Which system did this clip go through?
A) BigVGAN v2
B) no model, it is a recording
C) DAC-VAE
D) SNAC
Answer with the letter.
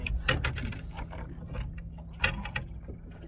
B